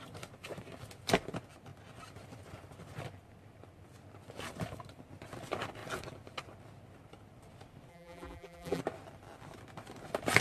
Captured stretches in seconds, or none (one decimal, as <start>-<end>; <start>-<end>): 0.0-7.9; 8.8-10.4